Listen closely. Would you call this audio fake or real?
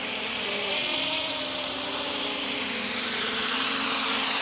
fake